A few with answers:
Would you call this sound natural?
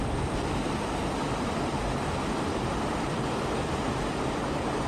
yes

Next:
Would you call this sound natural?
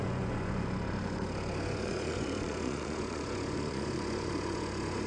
no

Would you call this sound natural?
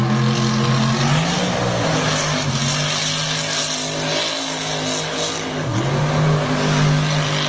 yes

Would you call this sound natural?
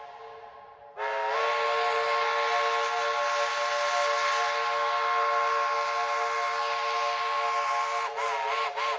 yes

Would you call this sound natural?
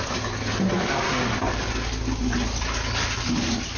yes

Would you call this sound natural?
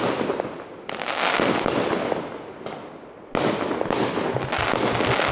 yes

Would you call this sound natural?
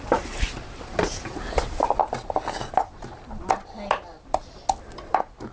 yes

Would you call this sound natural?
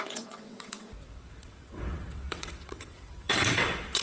no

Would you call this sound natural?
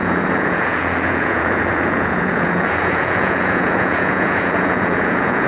no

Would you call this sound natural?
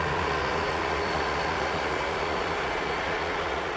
no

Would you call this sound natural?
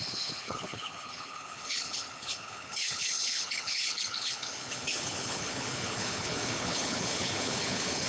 no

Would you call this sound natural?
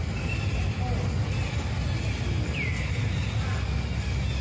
yes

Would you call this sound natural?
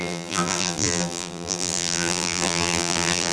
no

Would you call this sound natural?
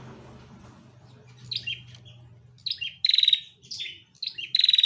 yes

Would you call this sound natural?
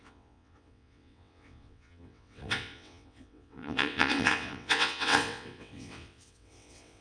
no